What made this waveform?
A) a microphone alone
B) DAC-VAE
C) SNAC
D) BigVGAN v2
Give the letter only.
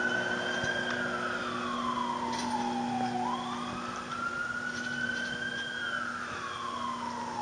A